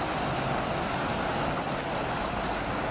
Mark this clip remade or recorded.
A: recorded